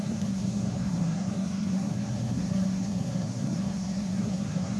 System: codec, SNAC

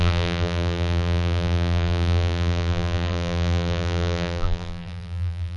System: vocoder, BigVGAN v2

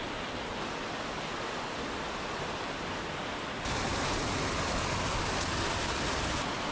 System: none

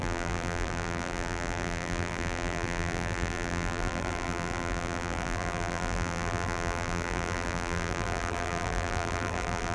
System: vocoder, BigVGAN v2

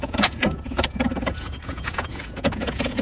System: vocoder, Vocos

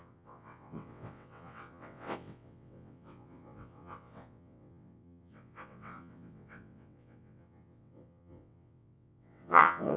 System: vocoder, WaveNeXt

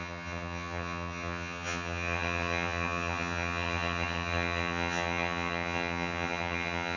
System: vocoder, HiFi-GAN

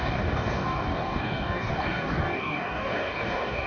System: codec, DAC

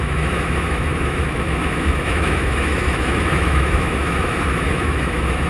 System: autoencoder, DAC-VAE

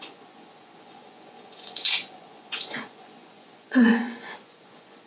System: vocoder, Vocos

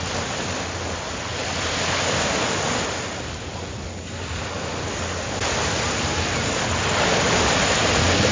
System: none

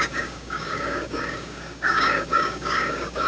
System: codec, DAC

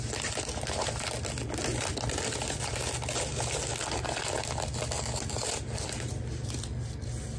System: none